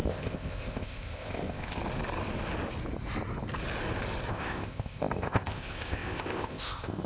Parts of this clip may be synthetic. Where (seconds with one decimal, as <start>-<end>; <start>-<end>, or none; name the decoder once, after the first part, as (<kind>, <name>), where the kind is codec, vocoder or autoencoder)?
0.0-1.8 (codec, ZipCodec); 4.3-7.1